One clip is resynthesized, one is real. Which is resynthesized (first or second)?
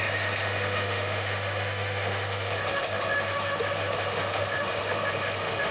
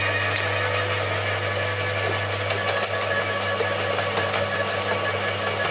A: first